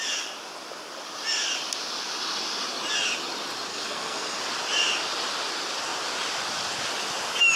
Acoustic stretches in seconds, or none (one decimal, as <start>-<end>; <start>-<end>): 0.0-3.7; 4.4-7.6

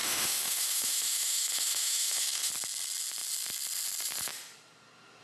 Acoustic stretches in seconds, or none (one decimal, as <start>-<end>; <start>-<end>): 2.5-5.2

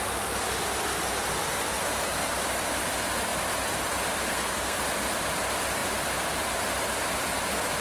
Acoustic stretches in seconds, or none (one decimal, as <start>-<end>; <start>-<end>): 0.0-4.3; 4.8-7.8

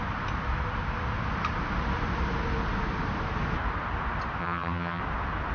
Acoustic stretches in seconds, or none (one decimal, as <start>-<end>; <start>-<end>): 0.0-4.4; 5.0-5.5

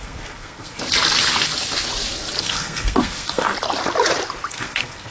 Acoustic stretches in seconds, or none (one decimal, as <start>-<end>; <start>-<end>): 0.8-2.4; 3.5-4.5

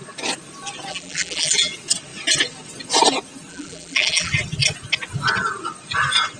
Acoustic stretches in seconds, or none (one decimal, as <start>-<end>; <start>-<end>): 0.0-0.9; 1.7-3.5; 4.3-6.4

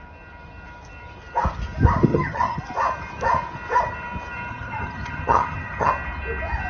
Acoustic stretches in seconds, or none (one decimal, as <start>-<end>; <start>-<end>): 0.0-2.1; 2.6-4.5; 5.9-6.7